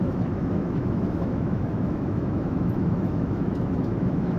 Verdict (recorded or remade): remade